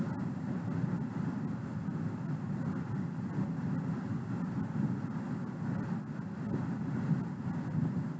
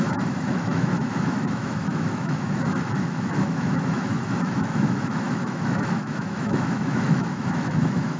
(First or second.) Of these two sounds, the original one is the first